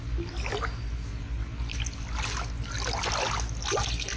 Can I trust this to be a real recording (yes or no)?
yes